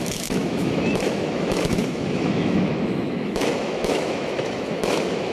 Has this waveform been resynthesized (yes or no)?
yes